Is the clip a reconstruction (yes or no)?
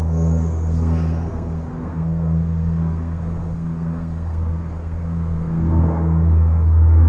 yes